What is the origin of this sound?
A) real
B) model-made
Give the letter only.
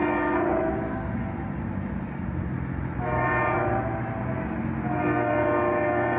A